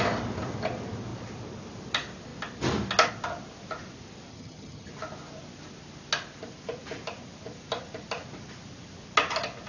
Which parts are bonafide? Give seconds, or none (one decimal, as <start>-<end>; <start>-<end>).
0.0-4.3; 4.9-9.7

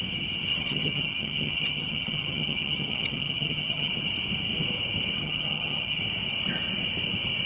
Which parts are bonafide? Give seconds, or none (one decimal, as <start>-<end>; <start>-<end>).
0.0-0.5; 3.9-5.2; 6.0-7.5

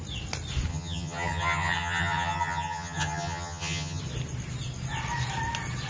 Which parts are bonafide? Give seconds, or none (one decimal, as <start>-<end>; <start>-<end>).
0.0-0.7; 4.0-5.9

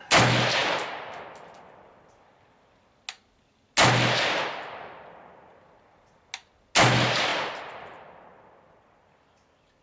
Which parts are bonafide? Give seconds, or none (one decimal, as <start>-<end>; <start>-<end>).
0.0-9.8

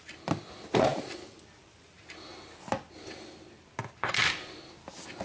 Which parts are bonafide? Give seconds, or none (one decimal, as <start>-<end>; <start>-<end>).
0.0-5.2

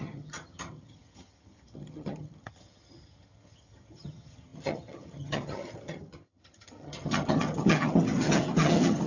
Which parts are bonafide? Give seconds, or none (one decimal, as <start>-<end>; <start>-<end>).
none